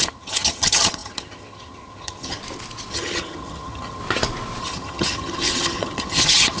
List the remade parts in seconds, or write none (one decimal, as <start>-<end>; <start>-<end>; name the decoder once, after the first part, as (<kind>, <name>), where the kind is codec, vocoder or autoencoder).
0.0-2.4 (vocoder, HiFi-GAN); 2.9-4.0; 4.6-6.6